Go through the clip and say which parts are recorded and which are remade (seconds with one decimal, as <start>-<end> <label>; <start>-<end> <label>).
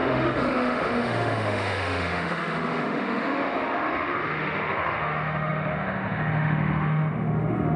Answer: 0.0-7.8 remade